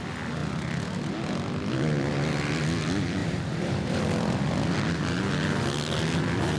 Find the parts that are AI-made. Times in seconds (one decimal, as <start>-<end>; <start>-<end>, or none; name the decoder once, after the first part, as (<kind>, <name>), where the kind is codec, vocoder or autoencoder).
3.2-4.0 (vocoder, BigVGAN v2)

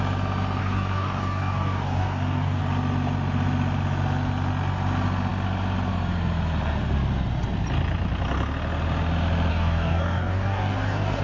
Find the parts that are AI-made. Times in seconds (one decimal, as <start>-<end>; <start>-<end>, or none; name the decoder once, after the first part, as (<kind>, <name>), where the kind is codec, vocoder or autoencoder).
0.6-2.6 (codec, DAC); 9.5-11.2

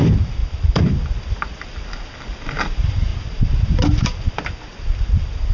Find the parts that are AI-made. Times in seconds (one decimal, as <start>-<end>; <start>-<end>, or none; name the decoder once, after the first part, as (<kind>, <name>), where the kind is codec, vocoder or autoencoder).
none

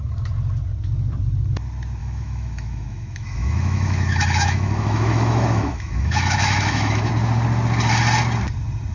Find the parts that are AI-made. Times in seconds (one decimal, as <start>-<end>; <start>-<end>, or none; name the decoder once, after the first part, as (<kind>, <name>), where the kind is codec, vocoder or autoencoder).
2.0-7.1 (autoencoder, DAC-VAE)

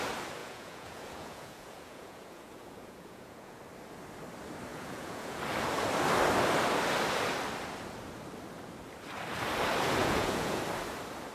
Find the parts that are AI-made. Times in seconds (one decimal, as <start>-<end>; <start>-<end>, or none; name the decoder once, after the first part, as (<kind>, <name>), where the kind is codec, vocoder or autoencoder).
0.4-3.6 (vocoder, Vocos); 4.7-5.4; 10.0-10.6

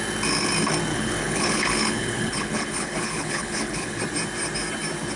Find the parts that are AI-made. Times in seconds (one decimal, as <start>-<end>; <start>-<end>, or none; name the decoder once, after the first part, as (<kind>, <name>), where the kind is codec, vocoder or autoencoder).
0.9-4.0 (codec, HILCodec)